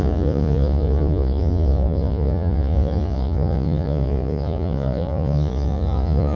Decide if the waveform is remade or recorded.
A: remade